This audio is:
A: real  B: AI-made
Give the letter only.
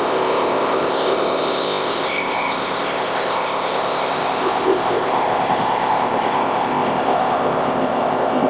B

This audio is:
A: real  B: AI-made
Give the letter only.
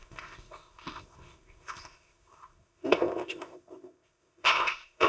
B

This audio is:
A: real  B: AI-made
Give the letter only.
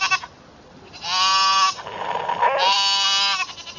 A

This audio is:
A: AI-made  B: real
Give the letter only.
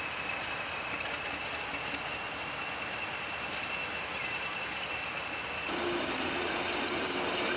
B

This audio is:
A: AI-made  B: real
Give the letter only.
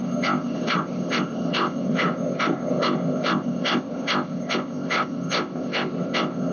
A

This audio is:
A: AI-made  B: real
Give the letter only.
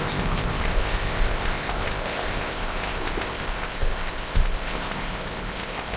A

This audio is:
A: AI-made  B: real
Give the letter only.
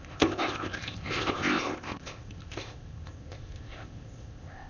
A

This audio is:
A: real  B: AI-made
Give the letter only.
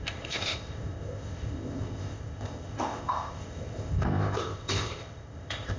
B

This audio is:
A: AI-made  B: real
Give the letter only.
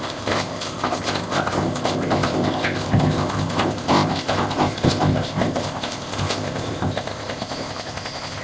A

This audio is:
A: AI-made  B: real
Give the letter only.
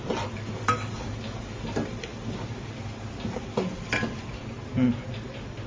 B